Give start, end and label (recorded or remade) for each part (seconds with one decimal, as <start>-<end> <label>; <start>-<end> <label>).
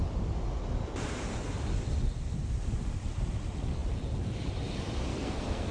0.0-5.1 recorded; 5.1-5.7 remade